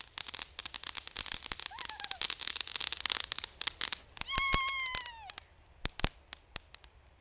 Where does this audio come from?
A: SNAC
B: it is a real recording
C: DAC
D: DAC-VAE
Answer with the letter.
B